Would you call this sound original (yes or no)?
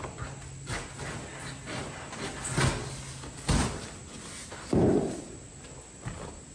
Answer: yes